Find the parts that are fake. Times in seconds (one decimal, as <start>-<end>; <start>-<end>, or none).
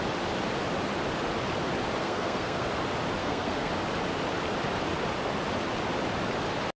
2.0-2.7; 3.2-3.7